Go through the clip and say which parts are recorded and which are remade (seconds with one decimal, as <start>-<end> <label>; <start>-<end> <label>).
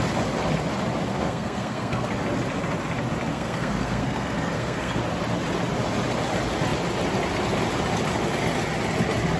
0.0-1.1 recorded; 1.1-2.2 remade; 2.2-3.3 recorded; 3.3-5.0 remade; 5.0-9.4 recorded